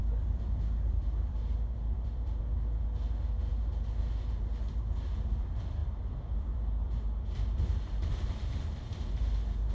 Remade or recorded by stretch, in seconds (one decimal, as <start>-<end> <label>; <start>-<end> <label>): 0.0-2.4 remade; 2.4-5.8 recorded; 5.8-8.6 remade; 8.6-9.7 recorded